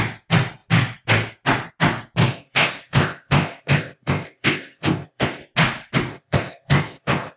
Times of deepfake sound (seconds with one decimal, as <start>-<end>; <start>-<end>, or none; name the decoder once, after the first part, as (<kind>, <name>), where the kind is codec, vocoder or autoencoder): 2.3-5.4 (codec, ZipCodec); 6.1-7.4